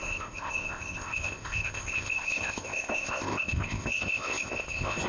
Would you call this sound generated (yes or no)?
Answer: yes